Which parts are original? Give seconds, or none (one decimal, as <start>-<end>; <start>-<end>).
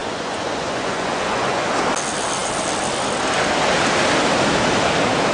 1.7-5.3